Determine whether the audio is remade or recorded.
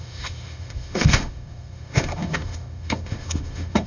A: remade